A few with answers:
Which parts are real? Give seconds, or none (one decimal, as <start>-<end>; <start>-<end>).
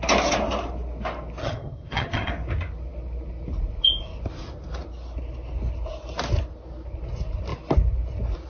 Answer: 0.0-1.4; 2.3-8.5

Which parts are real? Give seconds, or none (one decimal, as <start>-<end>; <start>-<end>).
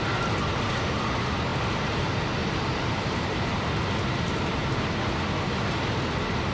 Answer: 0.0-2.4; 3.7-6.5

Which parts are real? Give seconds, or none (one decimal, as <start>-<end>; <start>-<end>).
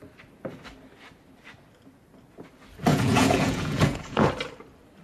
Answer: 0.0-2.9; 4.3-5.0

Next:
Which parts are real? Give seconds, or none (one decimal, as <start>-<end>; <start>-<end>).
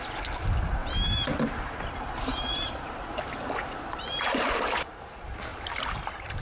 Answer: 0.0-0.8; 4.6-5.5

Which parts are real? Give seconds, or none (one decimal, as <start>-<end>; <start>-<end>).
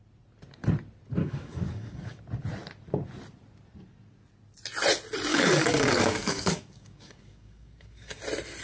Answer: 0.0-1.2; 2.2-5.3; 8.2-8.6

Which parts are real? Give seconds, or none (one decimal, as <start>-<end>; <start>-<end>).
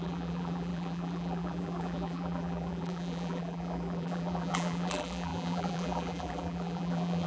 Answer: none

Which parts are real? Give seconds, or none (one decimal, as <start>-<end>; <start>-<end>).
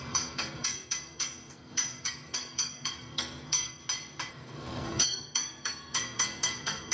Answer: 3.8-4.3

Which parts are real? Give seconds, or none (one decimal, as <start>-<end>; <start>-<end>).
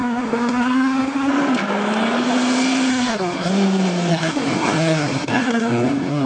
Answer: 1.3-2.9; 3.5-4.1